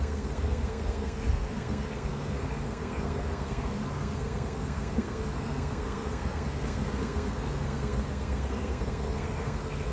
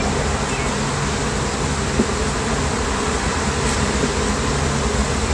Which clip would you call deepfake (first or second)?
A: first